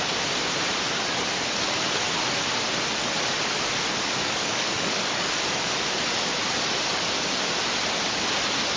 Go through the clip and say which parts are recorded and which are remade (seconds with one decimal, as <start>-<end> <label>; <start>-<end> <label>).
0.0-4.2 recorded; 4.2-5.3 remade; 5.3-8.8 recorded